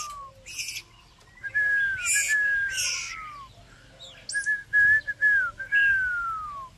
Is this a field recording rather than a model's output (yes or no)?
yes